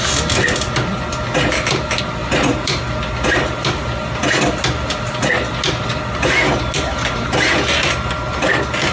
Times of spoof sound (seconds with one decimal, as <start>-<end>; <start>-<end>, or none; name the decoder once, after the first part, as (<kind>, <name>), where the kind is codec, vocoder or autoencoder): 2.2-2.8 (vocoder, BigVGAN v2)